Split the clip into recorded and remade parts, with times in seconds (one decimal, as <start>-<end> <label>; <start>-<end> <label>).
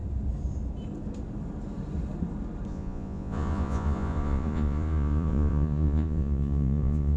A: 0.0-2.7 recorded; 2.7-7.2 remade